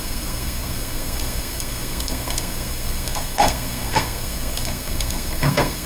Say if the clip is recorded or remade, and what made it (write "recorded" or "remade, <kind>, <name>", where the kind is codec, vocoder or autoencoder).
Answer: remade, codec, SNAC